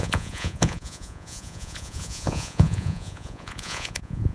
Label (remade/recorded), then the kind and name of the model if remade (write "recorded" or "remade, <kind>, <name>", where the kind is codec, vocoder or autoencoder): remade, vocoder, Vocos